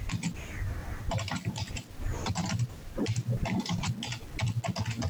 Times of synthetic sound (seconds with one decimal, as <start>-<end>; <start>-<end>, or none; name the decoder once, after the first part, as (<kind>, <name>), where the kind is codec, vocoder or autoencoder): 0.8-3.9 (vocoder, BigVGAN v2)